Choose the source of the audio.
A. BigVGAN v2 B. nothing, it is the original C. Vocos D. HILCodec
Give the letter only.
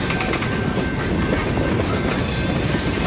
B